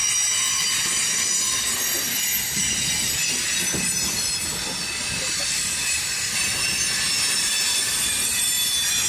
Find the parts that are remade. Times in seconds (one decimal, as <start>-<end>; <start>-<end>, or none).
none